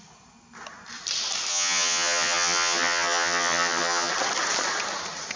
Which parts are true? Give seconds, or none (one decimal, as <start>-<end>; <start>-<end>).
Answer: 0.0-1.5; 4.1-5.4